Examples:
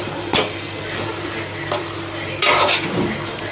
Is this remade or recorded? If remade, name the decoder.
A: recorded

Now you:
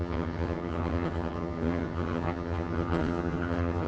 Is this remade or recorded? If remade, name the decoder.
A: remade, vocoder, HiFi-GAN